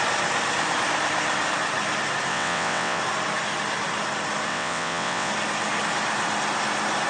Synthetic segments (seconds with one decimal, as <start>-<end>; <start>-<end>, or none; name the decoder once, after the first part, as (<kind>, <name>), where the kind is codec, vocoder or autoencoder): 2.3-3.0 (vocoder, WaveNeXt); 4.5-5.3